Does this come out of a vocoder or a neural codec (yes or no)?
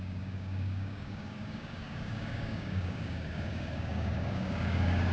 yes